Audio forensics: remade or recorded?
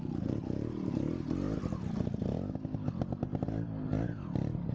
recorded